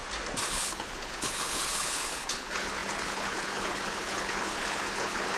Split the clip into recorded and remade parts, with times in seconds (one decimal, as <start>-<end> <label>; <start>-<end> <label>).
0.0-0.5 recorded; 0.5-5.4 remade